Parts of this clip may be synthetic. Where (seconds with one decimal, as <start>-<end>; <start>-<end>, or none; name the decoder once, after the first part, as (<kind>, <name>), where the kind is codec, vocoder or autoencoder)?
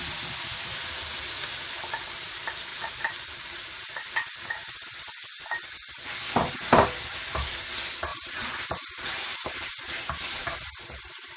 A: 2.7-3.9 (vocoder, BigVGAN v2); 8.1-9.7; 10.4-11.4